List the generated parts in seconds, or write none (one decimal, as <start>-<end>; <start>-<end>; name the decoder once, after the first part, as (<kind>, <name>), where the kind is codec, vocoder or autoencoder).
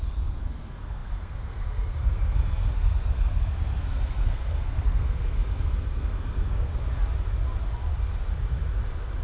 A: 0.0-6.8 (codec, SNAC)